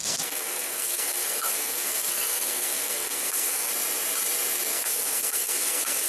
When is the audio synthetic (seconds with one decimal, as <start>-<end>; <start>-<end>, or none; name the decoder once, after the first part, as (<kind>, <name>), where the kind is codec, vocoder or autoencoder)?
0.0-3.7 (codec, SNAC); 4.7-6.1